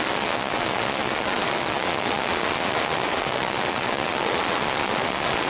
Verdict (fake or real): fake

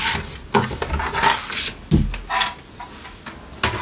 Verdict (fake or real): real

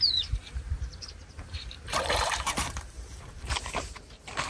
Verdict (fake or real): fake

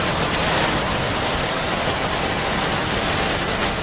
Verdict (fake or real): real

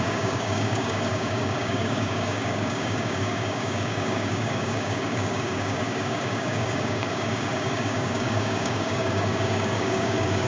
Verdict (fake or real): fake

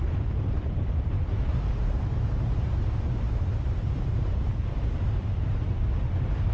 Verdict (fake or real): fake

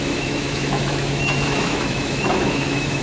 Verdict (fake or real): fake